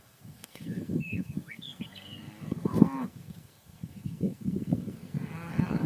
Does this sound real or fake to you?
fake